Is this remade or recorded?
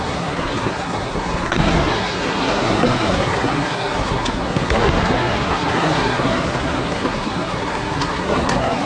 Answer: remade